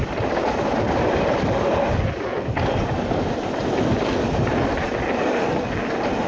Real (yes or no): yes